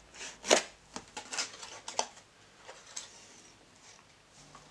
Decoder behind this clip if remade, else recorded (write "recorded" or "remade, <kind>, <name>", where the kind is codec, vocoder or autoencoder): recorded